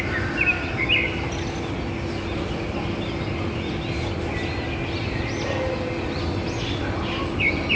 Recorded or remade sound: recorded